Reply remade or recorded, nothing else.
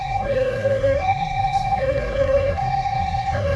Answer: remade